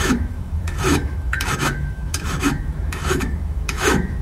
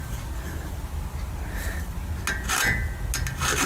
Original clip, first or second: second